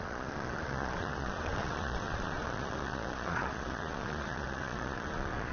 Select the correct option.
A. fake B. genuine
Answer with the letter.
A